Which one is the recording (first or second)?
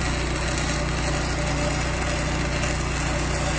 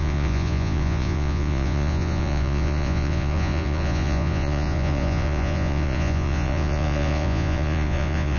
first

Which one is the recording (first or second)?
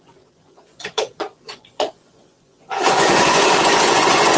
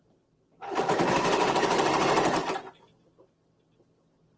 second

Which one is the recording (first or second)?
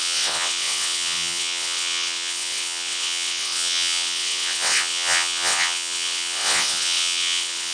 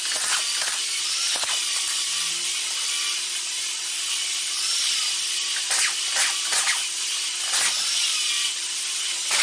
second